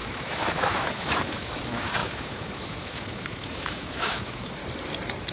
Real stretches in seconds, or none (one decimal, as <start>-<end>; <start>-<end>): 4.6-5.3